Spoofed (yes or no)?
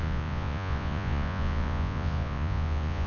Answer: yes